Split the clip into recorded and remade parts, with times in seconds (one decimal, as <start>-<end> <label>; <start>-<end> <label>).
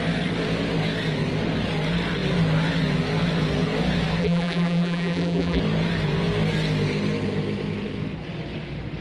0.0-4.2 recorded; 4.2-5.6 remade; 5.6-9.0 recorded